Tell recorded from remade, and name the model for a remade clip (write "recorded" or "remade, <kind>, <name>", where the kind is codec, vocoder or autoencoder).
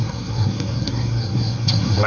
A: remade, codec, SNAC